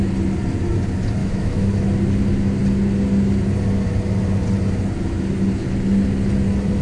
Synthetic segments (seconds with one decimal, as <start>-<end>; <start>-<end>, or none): 1.2-1.9